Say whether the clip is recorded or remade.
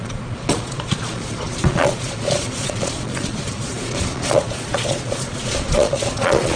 remade